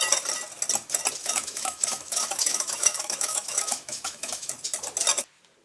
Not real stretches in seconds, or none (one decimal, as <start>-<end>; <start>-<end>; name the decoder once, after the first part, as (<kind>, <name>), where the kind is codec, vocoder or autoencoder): 1.2-4.5 (autoencoder, DAC-VAE)